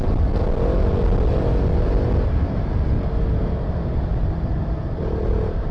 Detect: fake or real real